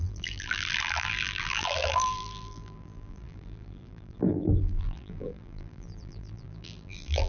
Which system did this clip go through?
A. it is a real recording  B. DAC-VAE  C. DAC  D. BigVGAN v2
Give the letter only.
D